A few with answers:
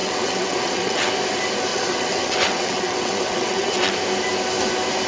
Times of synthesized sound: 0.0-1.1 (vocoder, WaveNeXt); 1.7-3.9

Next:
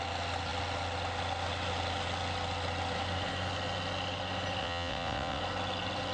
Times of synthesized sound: 4.6-5.4 (vocoder, WaveNeXt)

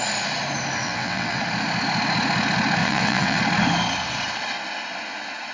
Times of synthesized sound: 0.8-1.4 (vocoder, WaveNeXt); 2.8-3.4

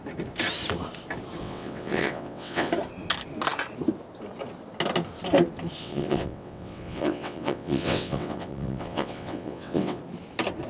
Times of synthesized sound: 1.4-2.7 (vocoder, WaveNeXt); 5.8-10.0

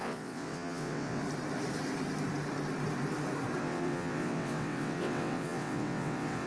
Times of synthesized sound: 0.0-1.2 (vocoder, WaveNeXt); 3.6-6.5